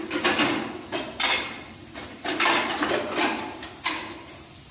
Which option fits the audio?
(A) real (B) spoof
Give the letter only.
A